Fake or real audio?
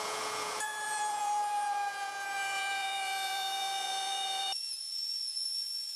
fake